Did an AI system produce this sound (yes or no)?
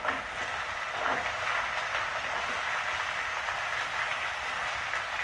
no